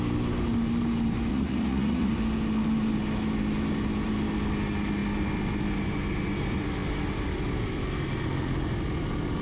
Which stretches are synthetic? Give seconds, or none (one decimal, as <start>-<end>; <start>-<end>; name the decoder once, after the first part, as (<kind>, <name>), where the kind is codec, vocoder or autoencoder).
1.3-2.1 (vocoder, Vocos)